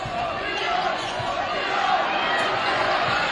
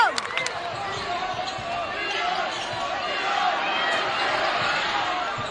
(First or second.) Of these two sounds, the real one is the second